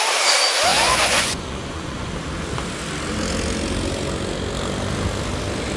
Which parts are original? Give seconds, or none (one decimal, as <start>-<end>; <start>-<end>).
0.0-0.7; 2.1-5.8